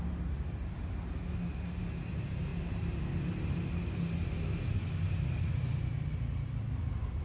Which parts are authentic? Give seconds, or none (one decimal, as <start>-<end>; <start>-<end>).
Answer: 0.0-7.2